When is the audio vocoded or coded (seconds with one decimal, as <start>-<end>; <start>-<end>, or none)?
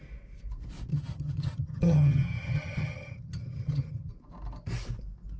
0.9-4.1